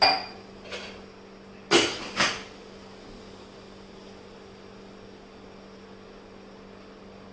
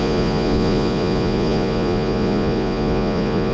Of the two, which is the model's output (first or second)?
second